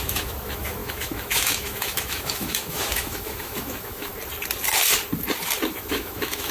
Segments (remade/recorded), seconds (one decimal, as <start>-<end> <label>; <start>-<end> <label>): 0.0-4.1 remade; 4.1-5.7 recorded; 5.7-6.5 remade